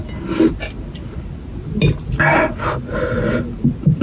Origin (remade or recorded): recorded